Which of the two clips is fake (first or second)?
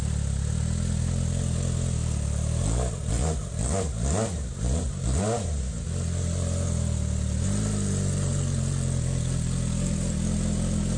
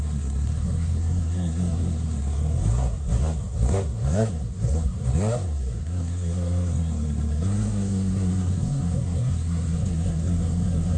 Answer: second